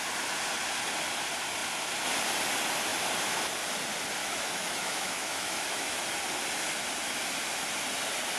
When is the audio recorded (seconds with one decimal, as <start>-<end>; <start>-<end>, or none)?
0.0-4.2; 6.0-8.4

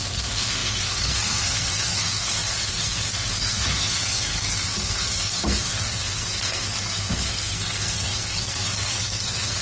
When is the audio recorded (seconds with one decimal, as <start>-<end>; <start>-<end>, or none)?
none

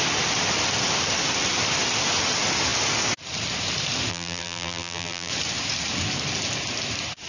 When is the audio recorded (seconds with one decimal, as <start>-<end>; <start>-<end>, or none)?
0.0-4.1; 5.3-7.3

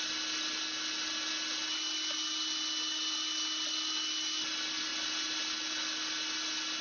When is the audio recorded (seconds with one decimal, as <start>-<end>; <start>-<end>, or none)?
0.0-6.8

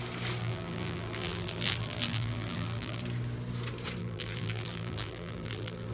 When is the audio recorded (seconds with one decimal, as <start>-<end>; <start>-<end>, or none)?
0.0-0.4; 3.0-4.0

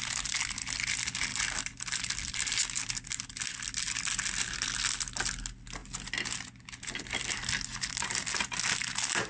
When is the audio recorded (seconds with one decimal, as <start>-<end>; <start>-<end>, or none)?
0.0-9.3

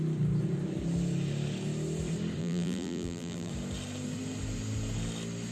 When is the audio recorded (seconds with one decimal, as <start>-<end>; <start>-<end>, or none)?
0.0-2.4; 3.5-5.5